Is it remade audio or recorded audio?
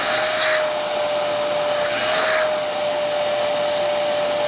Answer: recorded